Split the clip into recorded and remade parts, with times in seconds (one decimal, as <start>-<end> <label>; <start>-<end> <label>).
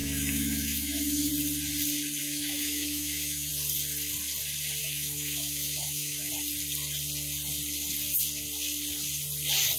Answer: 0.0-1.3 remade; 1.3-2.2 recorded; 2.2-3.5 remade; 3.5-4.8 recorded; 4.8-6.3 remade; 6.3-9.8 recorded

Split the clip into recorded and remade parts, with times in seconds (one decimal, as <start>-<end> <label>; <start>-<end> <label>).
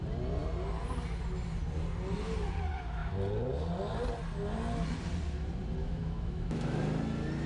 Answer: 0.0-5.8 recorded; 5.8-6.8 remade; 6.8-7.5 recorded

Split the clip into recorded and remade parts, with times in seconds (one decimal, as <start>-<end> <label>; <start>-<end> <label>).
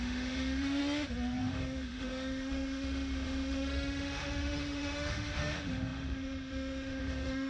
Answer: 0.0-0.8 remade; 0.8-1.4 recorded; 1.4-7.5 remade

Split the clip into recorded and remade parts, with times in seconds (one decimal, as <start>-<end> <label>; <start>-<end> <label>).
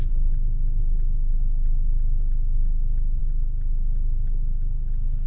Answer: 0.0-5.3 recorded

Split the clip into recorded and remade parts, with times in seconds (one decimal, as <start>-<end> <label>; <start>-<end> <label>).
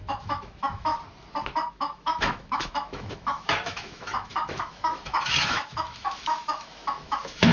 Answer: 0.0-0.9 remade; 0.9-1.7 recorded; 1.7-7.5 remade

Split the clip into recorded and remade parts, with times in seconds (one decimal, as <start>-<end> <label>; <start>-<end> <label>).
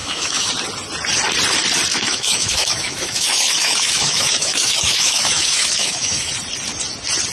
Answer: 0.0-0.5 remade; 0.5-1.9 recorded; 1.9-6.3 remade; 6.3-7.3 recorded